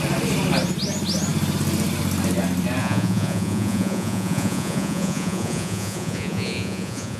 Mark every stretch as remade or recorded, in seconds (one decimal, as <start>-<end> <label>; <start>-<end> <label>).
0.0-2.8 recorded; 2.8-7.2 remade